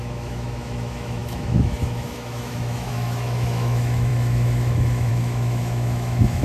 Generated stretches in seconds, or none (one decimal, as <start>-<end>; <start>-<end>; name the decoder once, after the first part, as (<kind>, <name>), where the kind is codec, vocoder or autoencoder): 0.0-6.4 (autoencoder, DAC-VAE)